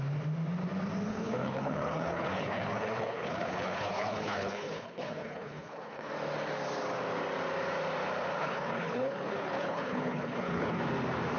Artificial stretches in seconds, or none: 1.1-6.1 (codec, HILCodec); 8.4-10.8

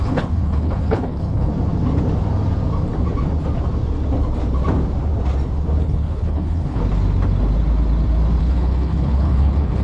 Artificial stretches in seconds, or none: 0.0-1.5 (codec, HILCodec); 5.8-6.8; 8.4-9.8

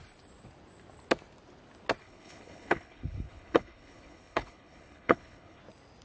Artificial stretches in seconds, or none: 2.0-5.6 (codec, HILCodec)

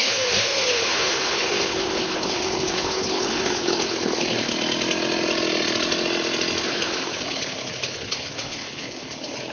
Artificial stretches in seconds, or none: 0.0-4.5 (codec, HILCodec); 6.6-9.5

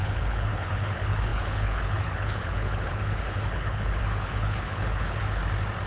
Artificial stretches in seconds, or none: 0.0-5.4 (codec, HILCodec)

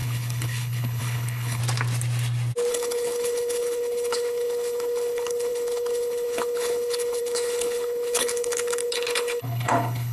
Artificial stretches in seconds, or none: 0.0-1.6 (codec, HILCodec); 2.7-10.1

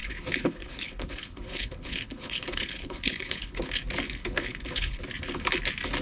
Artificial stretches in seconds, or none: 0.0-3.6 (codec, HILCodec); 4.2-5.0

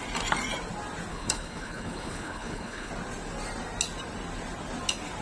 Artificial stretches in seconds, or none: 1.1-2.9 (codec, HILCodec)